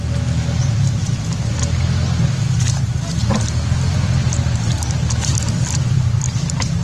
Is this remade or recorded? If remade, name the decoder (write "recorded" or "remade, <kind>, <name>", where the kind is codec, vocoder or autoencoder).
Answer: recorded